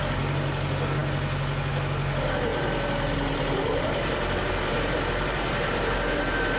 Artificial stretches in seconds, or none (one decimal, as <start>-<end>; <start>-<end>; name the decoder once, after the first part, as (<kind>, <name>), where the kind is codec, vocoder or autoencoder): 2.5-6.6 (vocoder, BigVGAN v2)